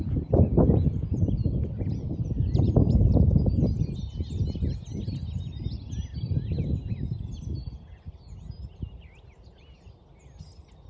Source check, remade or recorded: recorded